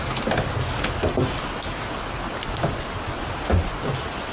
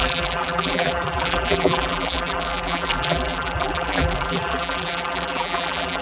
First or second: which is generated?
second